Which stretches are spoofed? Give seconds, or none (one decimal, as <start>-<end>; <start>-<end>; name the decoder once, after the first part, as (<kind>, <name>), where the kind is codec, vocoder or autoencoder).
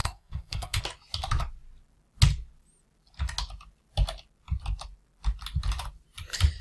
0.0-0.8 (codec, SNAC)